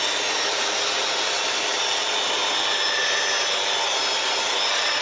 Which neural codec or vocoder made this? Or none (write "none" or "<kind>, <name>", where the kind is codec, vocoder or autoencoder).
none